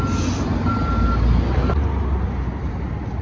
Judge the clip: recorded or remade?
recorded